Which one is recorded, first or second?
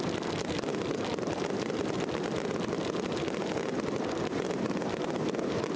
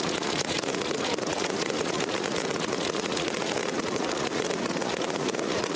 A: first